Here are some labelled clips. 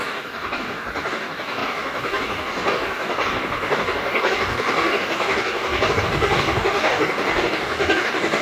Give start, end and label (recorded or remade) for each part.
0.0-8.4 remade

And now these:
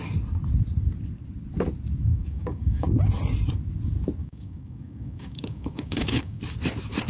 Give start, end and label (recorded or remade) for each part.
0.0-2.1 recorded; 2.1-2.9 remade; 2.9-4.2 recorded; 4.2-6.4 remade; 6.4-7.1 recorded

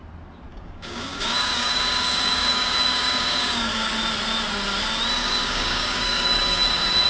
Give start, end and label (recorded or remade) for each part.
0.0-0.5 recorded; 0.5-3.9 remade; 3.9-5.2 recorded; 5.2-7.1 remade

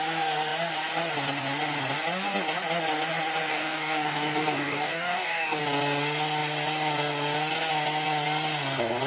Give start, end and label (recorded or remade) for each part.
0.0-3.5 recorded; 3.5-5.6 remade; 5.6-9.1 recorded

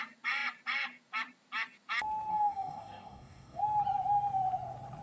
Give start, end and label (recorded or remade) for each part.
0.0-2.3 recorded; 2.3-3.6 remade; 3.6-5.0 recorded

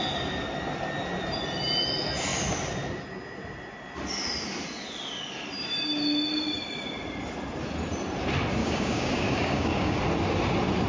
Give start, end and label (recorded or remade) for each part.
0.0-8.6 recorded; 8.6-10.0 remade; 10.0-10.9 recorded

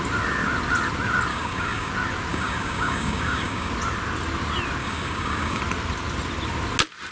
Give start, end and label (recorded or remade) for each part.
0.0-1.3 recorded; 1.3-1.9 remade; 1.9-2.3 recorded; 2.3-3.7 remade; 3.7-4.8 recorded; 4.8-5.6 remade; 5.6-7.1 recorded

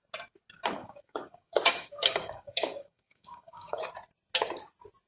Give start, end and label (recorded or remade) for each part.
0.0-0.8 recorded; 0.8-3.9 remade; 3.9-5.1 recorded